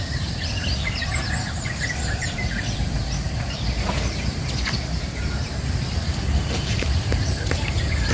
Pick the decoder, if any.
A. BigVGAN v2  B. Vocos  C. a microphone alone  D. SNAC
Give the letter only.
A